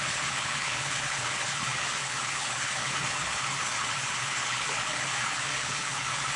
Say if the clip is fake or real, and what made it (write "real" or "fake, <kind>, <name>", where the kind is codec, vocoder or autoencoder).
fake, codec, HILCodec